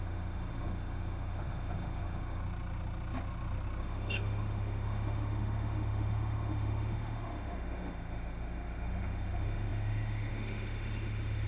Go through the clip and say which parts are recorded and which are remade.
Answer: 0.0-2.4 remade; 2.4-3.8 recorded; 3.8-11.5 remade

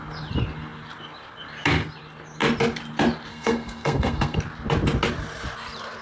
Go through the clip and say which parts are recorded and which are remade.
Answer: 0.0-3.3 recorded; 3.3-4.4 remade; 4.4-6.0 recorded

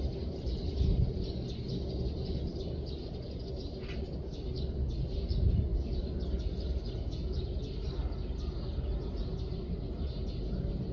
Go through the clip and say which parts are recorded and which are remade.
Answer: 0.0-10.9 recorded

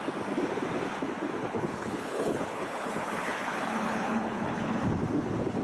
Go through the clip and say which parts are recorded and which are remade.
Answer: 0.0-1.4 recorded; 1.4-4.8 remade; 4.8-5.6 recorded

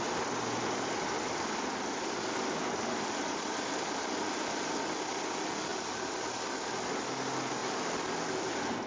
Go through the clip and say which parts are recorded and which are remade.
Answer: 0.0-8.9 recorded

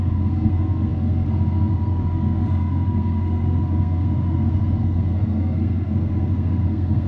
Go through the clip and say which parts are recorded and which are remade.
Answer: 0.0-7.1 remade